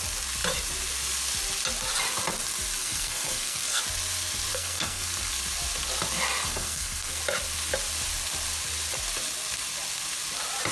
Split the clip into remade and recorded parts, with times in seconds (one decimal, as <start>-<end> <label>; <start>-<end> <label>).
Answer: 0.0-2.8 recorded; 2.8-3.8 remade; 3.8-4.5 recorded; 4.5-5.3 remade; 5.3-6.4 recorded; 6.4-7.2 remade; 7.2-10.7 recorded

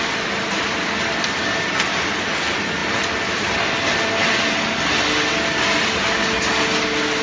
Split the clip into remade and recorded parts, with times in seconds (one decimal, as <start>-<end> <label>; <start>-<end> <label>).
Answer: 0.0-2.8 recorded; 2.8-4.1 remade; 4.1-7.2 recorded

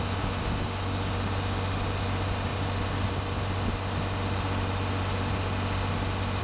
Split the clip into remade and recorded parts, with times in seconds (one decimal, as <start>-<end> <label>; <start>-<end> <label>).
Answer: 0.0-6.4 recorded

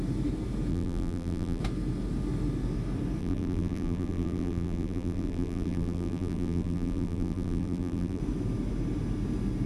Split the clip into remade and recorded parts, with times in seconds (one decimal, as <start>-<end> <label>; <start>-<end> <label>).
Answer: 0.0-0.7 recorded; 0.7-1.6 remade; 1.6-3.2 recorded; 3.2-8.2 remade; 8.2-9.7 recorded